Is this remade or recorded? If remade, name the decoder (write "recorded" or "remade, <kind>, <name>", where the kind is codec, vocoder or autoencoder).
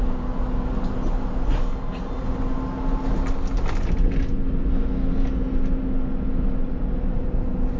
recorded